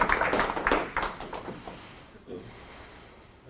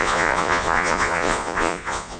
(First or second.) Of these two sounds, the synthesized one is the second